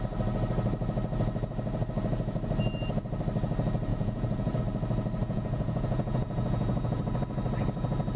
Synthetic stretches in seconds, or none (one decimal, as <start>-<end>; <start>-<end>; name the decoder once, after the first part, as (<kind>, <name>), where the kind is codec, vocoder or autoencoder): 3.9-4.6 (vocoder, Vocos); 5.2-7.0